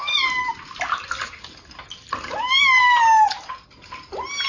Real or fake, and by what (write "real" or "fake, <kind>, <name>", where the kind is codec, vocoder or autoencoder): real